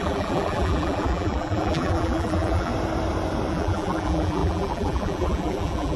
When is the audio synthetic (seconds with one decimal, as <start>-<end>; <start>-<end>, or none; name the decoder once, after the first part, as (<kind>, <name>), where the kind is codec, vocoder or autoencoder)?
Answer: 0.0-2.7 (vocoder, BigVGAN v2); 3.5-6.0

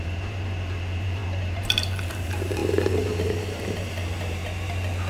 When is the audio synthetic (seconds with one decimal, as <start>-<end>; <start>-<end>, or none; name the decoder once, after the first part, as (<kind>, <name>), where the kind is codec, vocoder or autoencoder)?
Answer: 0.0-4.4 (vocoder, BigVGAN v2)

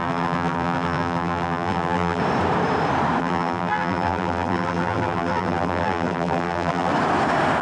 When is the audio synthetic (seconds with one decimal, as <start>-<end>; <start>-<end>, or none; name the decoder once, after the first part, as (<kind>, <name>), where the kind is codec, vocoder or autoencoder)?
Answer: 0.0-2.2 (vocoder, BigVGAN v2); 3.2-6.9

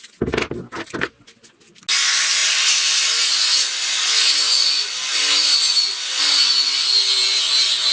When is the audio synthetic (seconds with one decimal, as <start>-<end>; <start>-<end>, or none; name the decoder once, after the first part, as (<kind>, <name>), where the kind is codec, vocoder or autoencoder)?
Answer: 2.4-3.0 (vocoder, BigVGAN v2)

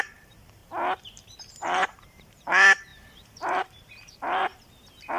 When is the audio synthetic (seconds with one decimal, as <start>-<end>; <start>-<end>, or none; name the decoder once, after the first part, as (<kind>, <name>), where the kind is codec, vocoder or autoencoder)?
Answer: 0.0-0.6 (vocoder, BigVGAN v2); 1.4-4.5